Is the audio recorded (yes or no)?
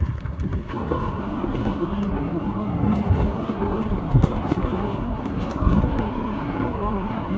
no